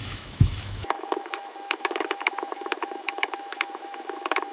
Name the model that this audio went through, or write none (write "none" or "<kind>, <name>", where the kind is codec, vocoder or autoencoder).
autoencoder, DAC-VAE